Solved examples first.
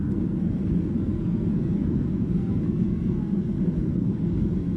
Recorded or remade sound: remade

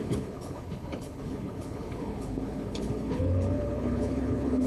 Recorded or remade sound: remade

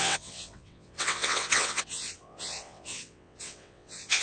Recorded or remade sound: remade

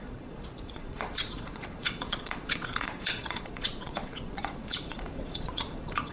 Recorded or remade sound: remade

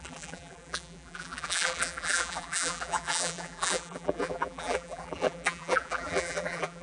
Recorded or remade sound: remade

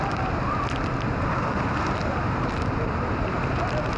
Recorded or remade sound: recorded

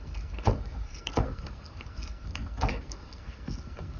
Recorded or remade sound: remade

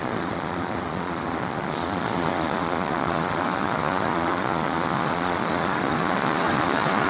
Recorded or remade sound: remade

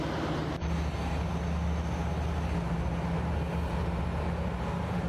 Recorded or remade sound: recorded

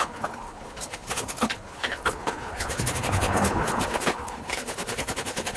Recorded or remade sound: remade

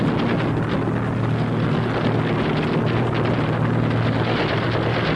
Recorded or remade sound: recorded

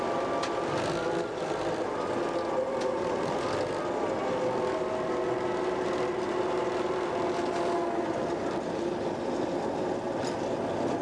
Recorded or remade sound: recorded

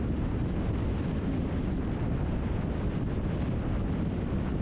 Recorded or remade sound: recorded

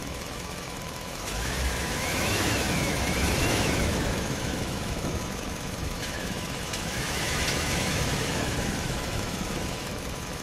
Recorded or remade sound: remade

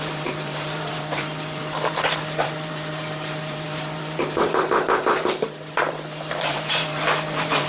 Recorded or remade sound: remade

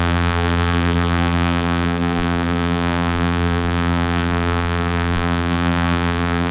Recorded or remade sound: remade